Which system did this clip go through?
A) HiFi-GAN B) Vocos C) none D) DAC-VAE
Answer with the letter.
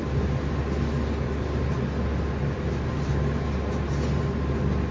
C